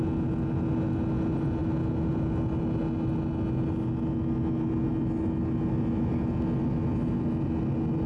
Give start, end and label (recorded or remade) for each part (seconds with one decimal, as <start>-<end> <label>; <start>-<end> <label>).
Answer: 0.0-8.1 recorded